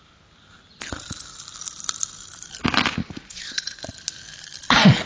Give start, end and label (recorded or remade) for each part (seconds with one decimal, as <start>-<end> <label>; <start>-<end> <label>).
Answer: 0.0-3.0 recorded; 3.0-3.8 remade; 3.8-5.1 recorded